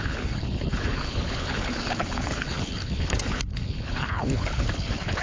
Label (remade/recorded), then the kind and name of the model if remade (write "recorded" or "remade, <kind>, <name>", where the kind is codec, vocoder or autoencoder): remade, codec, HILCodec